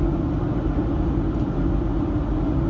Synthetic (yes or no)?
no